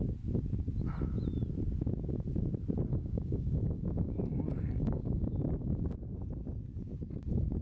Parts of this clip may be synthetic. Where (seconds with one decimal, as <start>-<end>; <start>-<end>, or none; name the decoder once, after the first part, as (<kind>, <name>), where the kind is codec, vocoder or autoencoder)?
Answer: 2.9-5.8 (codec, DAC)